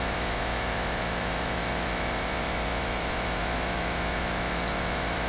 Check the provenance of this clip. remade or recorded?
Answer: remade